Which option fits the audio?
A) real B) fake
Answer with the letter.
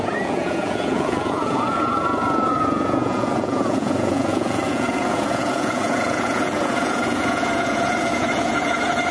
B